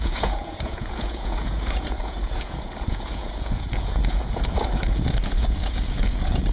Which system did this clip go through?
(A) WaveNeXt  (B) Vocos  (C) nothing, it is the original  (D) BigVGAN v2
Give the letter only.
B